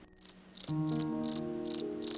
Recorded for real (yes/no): yes